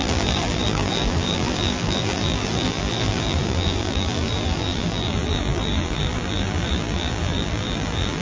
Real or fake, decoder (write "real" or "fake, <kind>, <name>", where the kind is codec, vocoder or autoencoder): fake, vocoder, BigVGAN v2